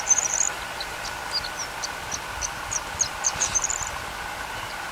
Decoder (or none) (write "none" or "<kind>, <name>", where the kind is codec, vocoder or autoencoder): none